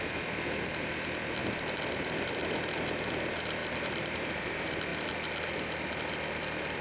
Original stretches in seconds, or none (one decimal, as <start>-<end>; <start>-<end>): 0.0-3.6; 4.5-6.8